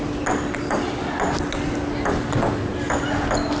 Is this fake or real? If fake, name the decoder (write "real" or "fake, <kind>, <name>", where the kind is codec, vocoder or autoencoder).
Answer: real